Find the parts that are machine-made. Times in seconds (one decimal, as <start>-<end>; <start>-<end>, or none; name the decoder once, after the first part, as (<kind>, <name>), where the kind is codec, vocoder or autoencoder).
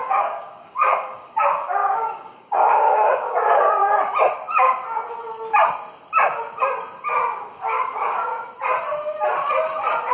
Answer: 0.0-3.8 (codec, DAC); 7.4-8.3